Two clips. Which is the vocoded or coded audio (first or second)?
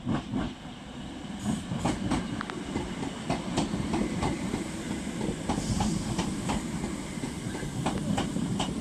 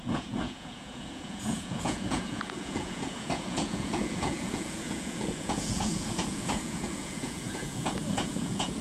second